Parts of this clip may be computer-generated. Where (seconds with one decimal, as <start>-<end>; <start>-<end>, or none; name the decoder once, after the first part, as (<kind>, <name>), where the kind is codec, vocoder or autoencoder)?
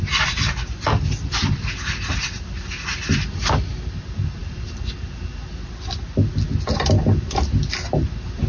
none